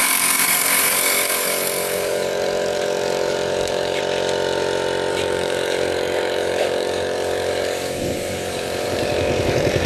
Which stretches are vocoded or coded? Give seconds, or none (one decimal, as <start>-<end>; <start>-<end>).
0.0-4.0; 5.1-9.9